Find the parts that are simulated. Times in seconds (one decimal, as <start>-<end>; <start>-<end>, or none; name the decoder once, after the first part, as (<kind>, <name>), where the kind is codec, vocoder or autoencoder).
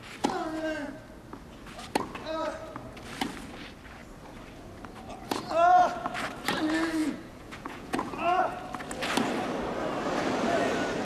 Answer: 7.0-8.4 (vocoder, Vocos)